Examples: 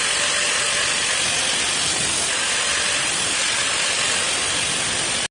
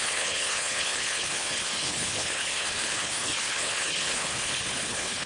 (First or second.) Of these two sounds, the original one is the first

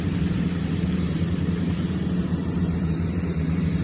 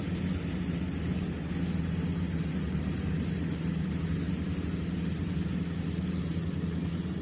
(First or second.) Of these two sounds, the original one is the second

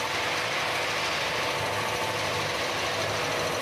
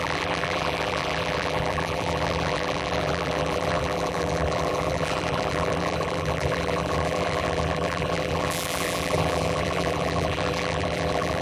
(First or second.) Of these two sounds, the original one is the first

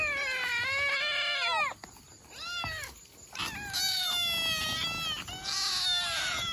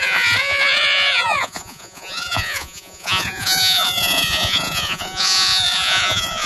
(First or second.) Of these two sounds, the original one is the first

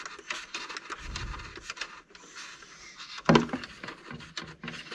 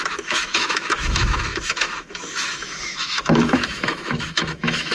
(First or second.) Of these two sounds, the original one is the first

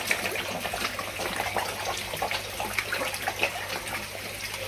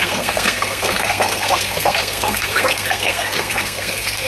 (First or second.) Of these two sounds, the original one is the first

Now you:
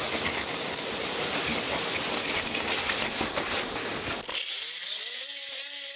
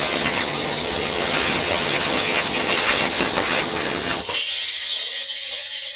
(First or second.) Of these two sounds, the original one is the first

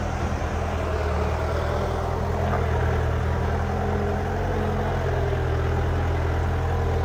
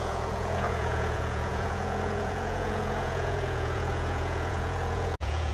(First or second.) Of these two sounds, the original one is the first